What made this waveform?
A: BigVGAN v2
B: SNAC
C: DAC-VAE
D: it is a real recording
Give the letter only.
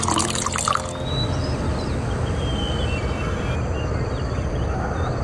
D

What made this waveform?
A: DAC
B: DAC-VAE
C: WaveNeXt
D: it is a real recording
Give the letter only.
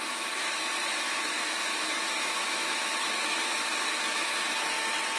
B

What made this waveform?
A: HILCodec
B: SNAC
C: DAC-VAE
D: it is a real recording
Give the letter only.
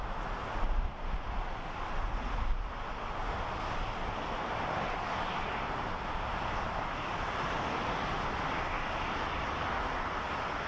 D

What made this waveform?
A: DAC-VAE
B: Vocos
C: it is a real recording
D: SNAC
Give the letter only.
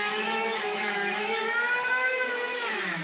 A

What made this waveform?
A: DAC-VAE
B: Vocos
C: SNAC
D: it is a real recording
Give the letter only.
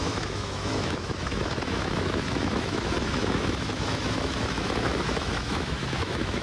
A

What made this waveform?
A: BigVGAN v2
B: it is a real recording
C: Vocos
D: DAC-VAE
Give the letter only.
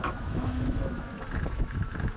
D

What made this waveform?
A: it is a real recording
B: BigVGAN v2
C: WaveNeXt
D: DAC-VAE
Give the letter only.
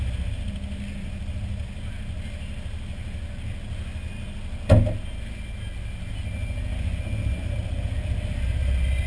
A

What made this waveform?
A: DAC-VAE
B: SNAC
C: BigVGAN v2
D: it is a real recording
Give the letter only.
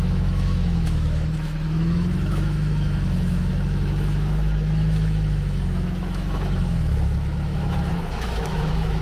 A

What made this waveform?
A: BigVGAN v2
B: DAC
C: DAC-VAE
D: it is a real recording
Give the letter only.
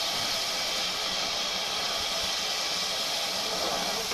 D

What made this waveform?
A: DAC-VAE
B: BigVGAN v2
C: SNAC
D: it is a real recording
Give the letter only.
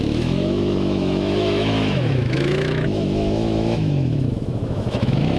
A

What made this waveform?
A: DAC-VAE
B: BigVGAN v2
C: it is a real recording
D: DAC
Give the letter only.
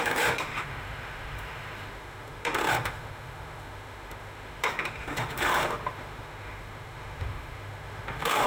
A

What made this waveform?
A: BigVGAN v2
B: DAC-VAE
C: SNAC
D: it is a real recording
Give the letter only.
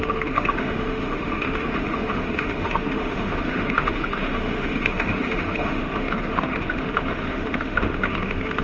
B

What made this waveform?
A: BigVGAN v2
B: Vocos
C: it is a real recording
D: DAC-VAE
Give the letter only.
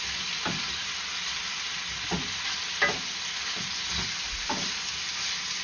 C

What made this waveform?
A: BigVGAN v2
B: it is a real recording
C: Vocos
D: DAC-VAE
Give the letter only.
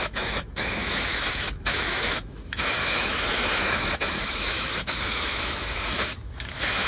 D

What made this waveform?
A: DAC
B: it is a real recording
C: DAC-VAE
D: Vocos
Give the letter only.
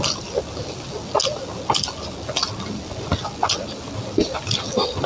B